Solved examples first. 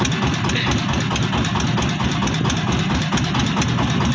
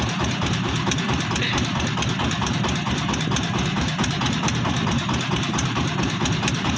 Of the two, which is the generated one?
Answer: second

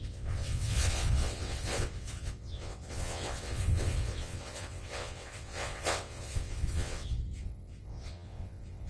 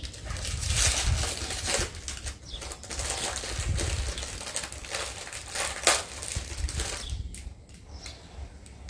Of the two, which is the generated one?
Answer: first